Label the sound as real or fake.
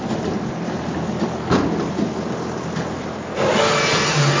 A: real